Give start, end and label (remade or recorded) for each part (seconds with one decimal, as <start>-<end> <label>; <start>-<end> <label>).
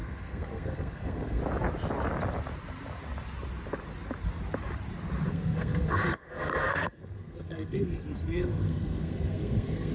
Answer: 0.0-1.4 remade; 1.4-5.3 recorded; 5.3-9.9 remade